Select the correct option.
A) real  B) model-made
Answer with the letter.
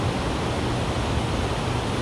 A